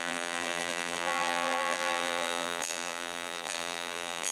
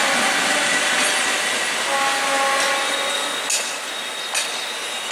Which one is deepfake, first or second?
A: first